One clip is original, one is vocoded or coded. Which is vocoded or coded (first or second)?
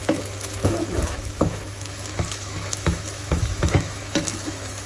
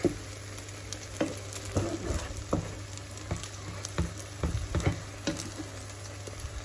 first